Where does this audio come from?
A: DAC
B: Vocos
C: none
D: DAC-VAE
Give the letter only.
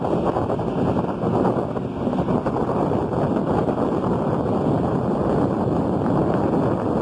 C